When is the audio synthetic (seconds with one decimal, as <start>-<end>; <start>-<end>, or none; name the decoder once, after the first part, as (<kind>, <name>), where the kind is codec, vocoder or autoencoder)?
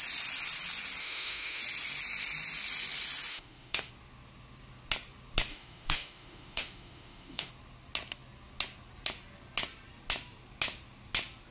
1.0-1.6 (autoencoder, DAC-VAE); 3.3-3.9; 5.5-7.5